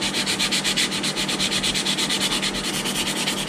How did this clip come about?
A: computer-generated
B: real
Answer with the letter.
B